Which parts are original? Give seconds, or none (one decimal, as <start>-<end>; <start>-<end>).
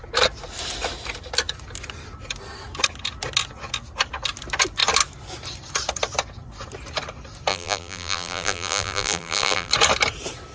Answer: 0.0-7.5; 9.7-10.5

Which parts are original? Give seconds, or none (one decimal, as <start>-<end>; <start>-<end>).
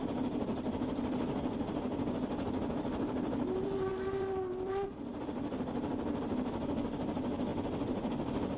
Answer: 0.0-0.5; 2.7-3.9; 5.2-8.6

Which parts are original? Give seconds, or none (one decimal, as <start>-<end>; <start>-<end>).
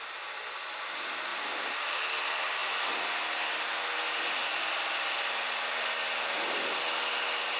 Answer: 0.0-1.3; 2.0-2.6; 6.8-7.6